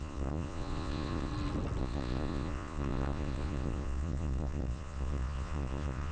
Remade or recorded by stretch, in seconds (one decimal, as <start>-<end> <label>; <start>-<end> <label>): 0.0-1.3 remade; 1.3-1.8 recorded; 1.8-6.1 remade